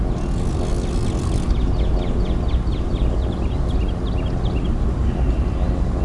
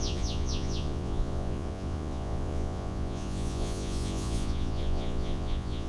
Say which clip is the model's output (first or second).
second